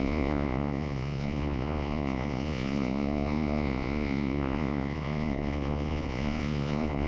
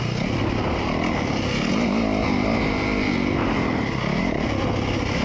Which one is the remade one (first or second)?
first